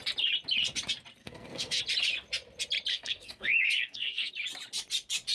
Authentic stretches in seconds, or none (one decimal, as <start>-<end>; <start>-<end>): 0.0-1.2; 1.8-2.9; 4.3-5.3